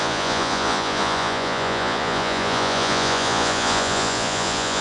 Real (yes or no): no